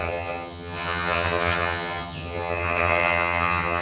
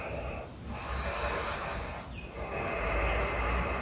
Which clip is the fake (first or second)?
first